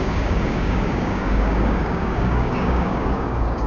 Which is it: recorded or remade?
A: remade